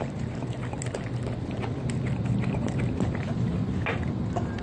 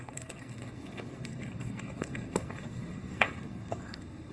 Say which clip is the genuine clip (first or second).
first